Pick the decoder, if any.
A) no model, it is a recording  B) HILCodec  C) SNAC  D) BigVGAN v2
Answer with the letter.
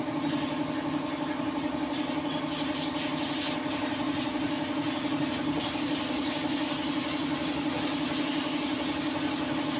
A